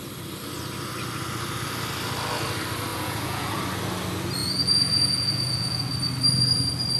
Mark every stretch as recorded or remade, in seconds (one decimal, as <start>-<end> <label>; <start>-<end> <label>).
0.0-2.9 recorded; 2.9-3.6 remade; 3.6-4.4 recorded; 4.4-5.9 remade; 5.9-7.0 recorded